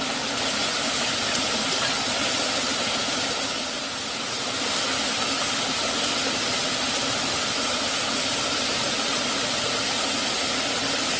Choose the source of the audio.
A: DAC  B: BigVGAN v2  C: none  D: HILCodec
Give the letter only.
C